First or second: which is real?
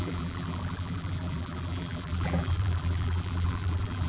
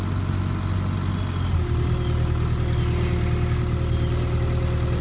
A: second